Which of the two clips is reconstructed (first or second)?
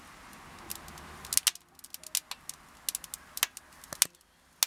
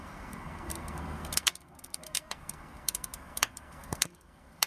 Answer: second